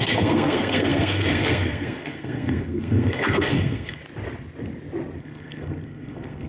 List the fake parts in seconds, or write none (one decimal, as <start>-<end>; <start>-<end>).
0.0-4.0; 5.2-6.5